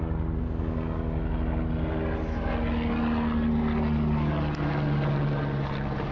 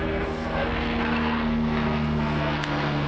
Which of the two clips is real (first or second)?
first